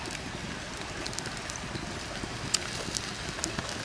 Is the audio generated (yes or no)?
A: no